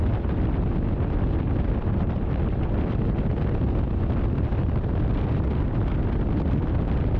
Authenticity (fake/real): real